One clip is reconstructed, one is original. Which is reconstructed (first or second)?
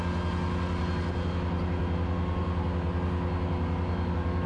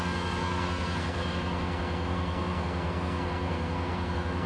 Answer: second